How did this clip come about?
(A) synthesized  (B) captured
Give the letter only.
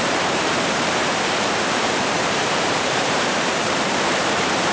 A